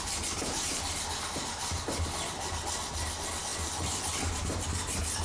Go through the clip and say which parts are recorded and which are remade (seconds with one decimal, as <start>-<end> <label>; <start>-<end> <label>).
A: 0.0-5.2 recorded